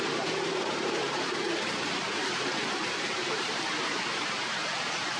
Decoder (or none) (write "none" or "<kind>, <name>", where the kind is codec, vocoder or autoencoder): vocoder, BigVGAN v2